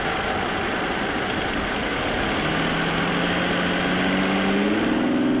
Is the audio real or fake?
real